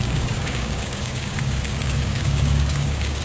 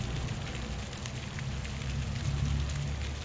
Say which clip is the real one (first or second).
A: second